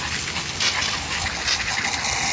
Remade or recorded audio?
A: recorded